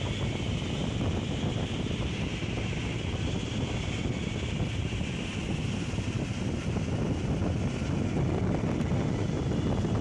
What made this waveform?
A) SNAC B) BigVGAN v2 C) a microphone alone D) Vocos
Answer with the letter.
C